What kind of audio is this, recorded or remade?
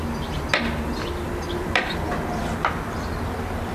recorded